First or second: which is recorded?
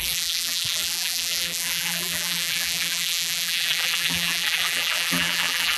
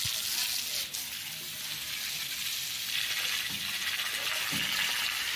second